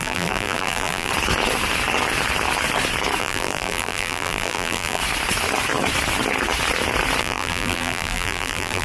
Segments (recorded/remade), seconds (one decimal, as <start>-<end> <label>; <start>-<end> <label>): 0.0-1.1 remade; 1.1-3.2 recorded; 3.2-5.0 remade; 5.0-7.2 recorded; 7.2-8.8 remade